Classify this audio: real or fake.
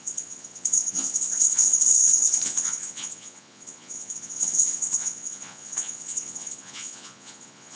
fake